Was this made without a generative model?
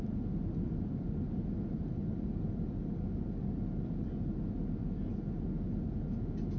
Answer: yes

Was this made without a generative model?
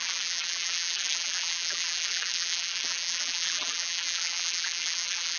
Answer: no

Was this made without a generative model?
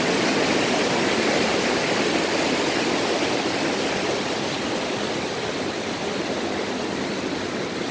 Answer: yes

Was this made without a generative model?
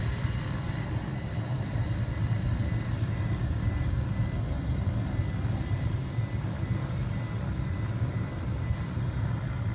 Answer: yes